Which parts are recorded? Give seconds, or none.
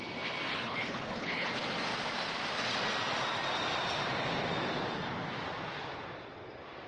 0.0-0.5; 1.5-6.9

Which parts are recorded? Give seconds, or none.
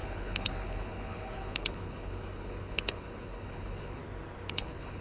4.0-4.5